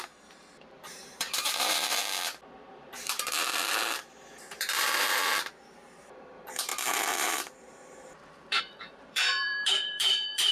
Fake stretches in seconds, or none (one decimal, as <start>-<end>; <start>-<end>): 0.0-2.0; 2.7-10.5